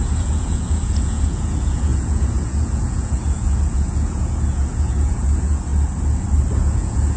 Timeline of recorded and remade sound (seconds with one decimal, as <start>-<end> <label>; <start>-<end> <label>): 0.0-5.7 remade; 5.7-6.5 recorded; 6.5-7.2 remade